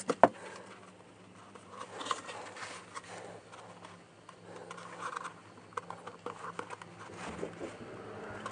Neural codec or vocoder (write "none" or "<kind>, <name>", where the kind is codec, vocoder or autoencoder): none